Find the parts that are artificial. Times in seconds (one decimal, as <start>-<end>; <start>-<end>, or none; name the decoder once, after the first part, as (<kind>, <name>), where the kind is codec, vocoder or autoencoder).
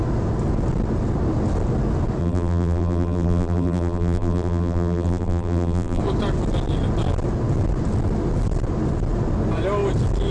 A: 2.2-6.0 (vocoder, BigVGAN v2)